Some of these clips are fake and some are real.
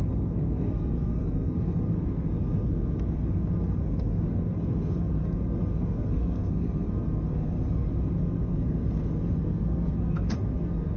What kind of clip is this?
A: fake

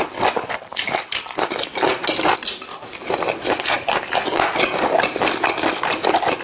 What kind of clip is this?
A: real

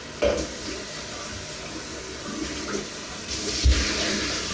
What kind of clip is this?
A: real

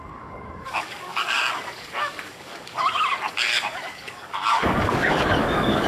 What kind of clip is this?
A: fake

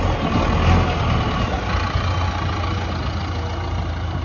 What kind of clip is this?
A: real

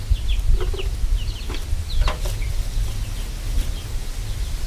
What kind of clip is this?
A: real